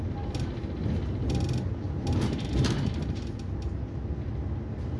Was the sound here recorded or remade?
recorded